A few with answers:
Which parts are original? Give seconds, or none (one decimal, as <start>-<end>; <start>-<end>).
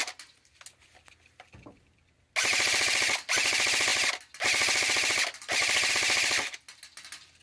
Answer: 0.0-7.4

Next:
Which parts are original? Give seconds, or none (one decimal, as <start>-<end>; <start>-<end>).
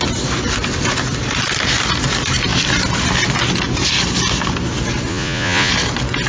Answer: 0.0-5.1; 5.7-6.3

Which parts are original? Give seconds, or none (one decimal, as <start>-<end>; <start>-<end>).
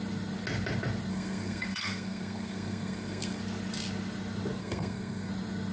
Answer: 0.0-1.1; 3.4-4.6; 5.3-5.7